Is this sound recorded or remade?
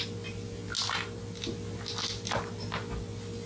recorded